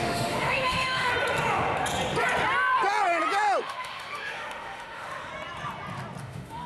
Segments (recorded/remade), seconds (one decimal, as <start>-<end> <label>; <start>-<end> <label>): 0.0-1.1 remade; 1.1-3.6 recorded; 3.6-5.3 remade; 5.3-6.2 recorded; 6.2-6.7 remade